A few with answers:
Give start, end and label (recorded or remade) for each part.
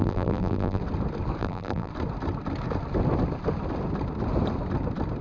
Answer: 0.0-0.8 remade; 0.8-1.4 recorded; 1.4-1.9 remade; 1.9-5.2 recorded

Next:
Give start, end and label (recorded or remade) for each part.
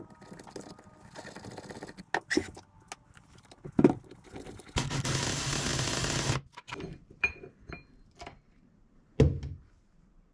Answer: 0.0-10.3 recorded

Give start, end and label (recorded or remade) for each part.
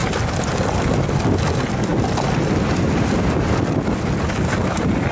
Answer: 0.0-5.1 recorded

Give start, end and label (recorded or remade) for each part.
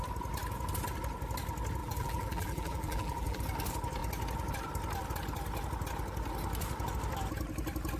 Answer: 0.0-1.8 recorded; 1.8-3.4 remade; 3.4-8.0 recorded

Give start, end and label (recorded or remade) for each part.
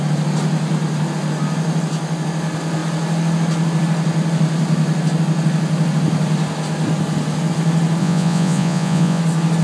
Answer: 0.0-8.0 recorded; 8.0-9.2 remade; 9.2-9.6 recorded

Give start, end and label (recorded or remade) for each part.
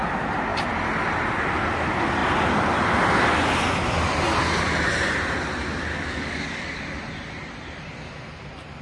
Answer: 0.0-5.9 recorded; 5.9-6.8 remade; 6.8-8.8 recorded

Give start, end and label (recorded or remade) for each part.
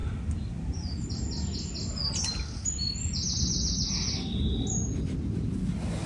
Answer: 0.0-6.1 recorded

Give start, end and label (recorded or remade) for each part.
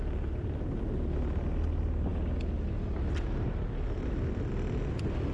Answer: 0.0-5.3 recorded